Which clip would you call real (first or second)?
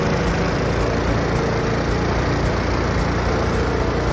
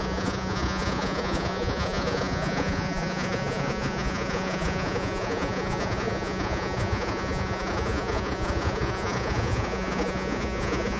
first